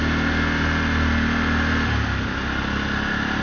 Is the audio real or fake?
real